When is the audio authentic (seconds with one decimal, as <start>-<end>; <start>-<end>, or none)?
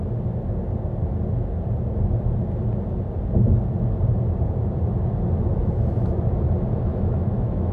0.0-5.6; 6.3-6.9